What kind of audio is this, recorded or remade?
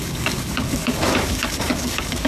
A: remade